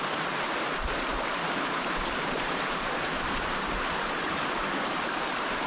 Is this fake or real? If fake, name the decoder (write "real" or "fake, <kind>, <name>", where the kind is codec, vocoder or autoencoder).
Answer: fake, vocoder, BigVGAN v2